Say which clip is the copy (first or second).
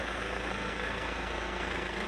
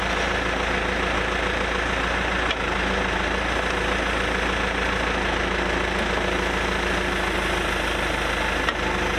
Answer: first